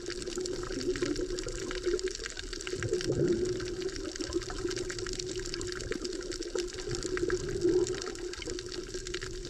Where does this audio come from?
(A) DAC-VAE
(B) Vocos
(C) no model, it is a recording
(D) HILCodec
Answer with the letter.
C